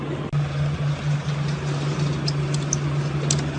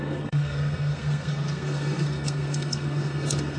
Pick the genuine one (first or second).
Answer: first